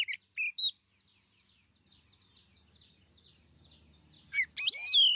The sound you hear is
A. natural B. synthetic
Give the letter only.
A